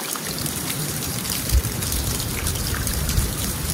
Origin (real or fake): fake